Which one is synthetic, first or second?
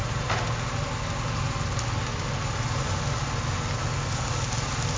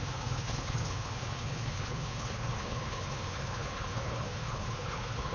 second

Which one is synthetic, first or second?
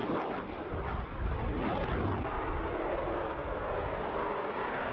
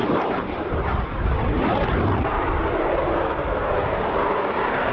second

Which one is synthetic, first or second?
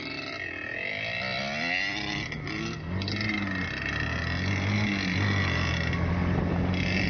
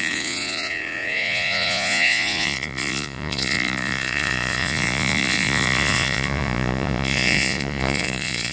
second